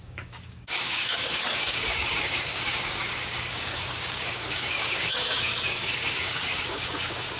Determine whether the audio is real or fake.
fake